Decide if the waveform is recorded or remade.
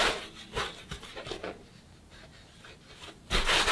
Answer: recorded